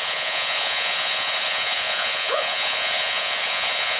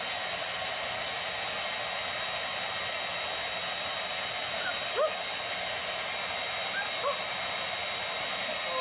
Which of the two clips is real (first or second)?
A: second